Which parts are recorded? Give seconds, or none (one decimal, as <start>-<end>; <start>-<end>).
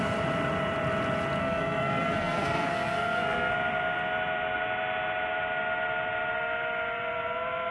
0.0-1.4; 3.5-7.7